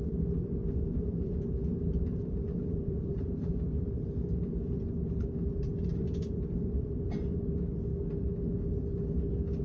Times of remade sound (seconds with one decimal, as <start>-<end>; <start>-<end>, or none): 0.0-7.9